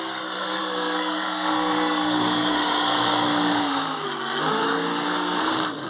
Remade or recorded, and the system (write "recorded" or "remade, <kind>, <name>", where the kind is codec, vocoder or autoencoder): remade, codec, SNAC